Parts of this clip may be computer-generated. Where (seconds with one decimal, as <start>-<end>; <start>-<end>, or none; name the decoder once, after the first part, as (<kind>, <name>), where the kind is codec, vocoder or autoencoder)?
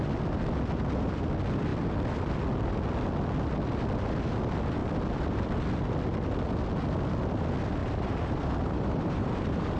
7.8-9.8 (vocoder, BigVGAN v2)